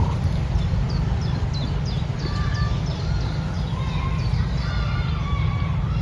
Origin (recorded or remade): recorded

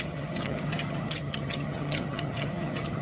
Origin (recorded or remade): remade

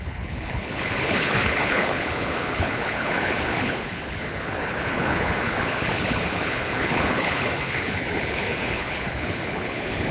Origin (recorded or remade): remade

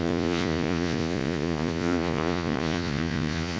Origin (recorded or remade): remade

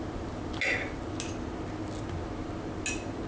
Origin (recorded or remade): recorded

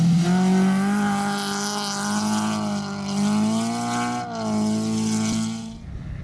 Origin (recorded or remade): recorded